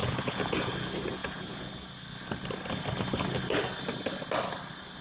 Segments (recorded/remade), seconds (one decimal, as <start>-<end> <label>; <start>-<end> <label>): 0.0-0.7 remade; 0.7-1.2 recorded; 1.2-1.7 remade; 1.7-5.0 recorded